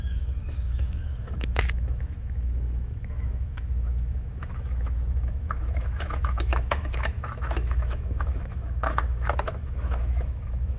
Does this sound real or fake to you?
fake